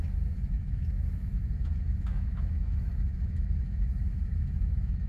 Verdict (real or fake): fake